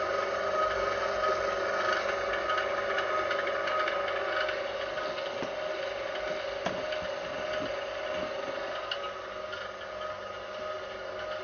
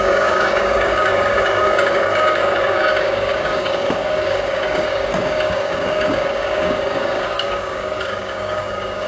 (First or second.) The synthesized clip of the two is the second